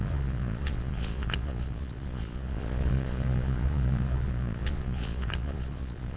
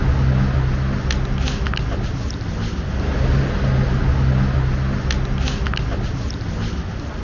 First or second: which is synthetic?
first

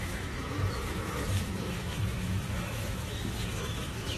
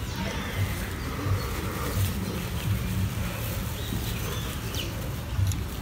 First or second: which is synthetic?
first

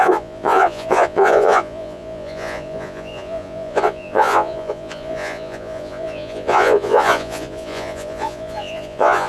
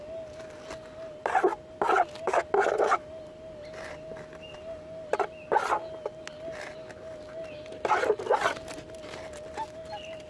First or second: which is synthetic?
first